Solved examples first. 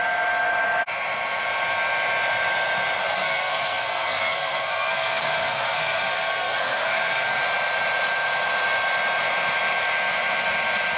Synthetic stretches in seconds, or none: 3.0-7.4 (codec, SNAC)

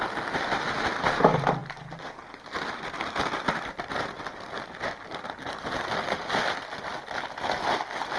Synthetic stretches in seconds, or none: none